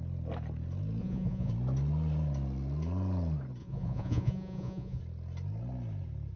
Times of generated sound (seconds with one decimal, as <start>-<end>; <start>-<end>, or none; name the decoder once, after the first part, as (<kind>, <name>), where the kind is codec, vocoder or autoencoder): 1.0-1.5 (vocoder, Vocos); 3.6-5.0